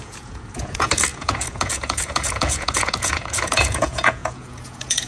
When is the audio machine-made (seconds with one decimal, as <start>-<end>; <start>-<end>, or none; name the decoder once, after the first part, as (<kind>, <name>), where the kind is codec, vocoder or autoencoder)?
0.0-5.1 (vocoder, Vocos)